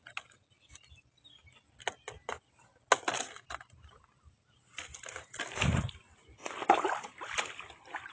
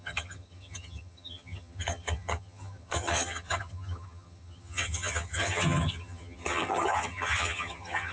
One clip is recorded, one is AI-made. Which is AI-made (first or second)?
second